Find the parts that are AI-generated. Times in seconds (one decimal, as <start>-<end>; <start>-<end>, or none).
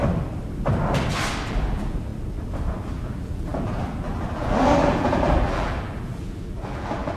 1.5-2.1; 2.9-7.2